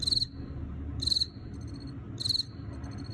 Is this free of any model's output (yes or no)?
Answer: yes